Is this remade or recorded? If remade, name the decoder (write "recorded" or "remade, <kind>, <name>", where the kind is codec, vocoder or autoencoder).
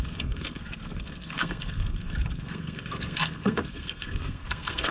remade, codec, SNAC